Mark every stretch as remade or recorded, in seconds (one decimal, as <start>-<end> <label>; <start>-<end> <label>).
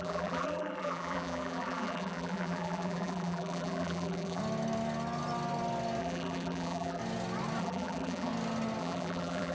0.0-4.4 remade; 4.4-6.0 recorded; 6.0-7.0 remade; 7.0-7.6 recorded; 7.6-8.3 remade; 8.3-8.8 recorded; 8.8-9.5 remade